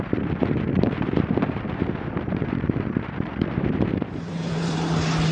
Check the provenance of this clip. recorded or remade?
remade